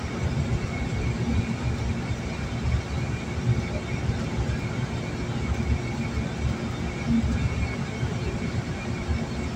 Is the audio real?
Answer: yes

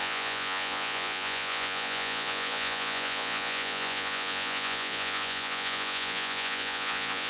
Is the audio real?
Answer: no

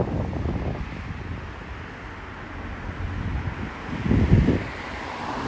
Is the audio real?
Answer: yes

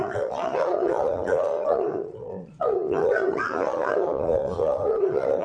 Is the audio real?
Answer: no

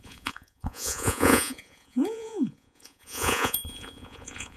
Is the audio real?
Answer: no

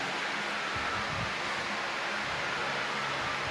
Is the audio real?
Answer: yes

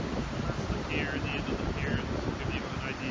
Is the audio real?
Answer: yes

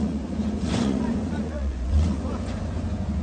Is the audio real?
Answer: no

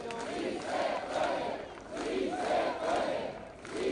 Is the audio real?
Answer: yes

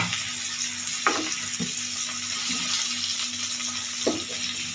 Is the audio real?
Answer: yes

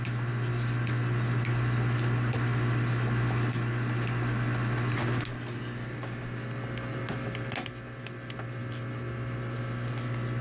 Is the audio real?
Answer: yes